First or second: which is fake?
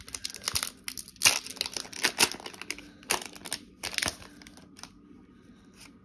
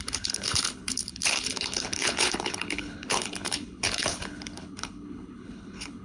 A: second